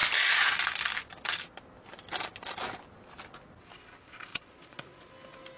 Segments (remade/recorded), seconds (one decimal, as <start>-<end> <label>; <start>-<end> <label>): 0.0-4.3 recorded; 4.3-5.1 remade; 5.1-5.6 recorded